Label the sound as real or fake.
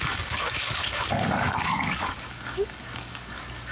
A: fake